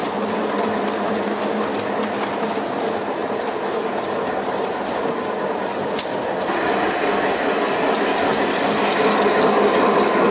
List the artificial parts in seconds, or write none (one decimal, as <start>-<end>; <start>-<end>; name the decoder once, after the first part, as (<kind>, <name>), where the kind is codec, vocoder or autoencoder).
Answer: none